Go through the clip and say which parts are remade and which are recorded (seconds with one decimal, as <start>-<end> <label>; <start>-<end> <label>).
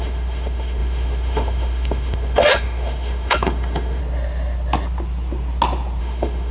0.0-4.0 remade; 4.0-6.0 recorded; 6.0-6.5 remade